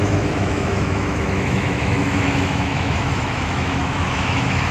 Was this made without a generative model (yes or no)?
no